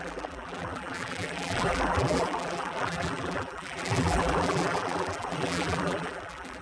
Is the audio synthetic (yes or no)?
yes